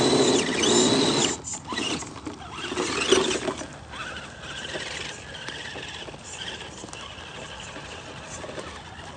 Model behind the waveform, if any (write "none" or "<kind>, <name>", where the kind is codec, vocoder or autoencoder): none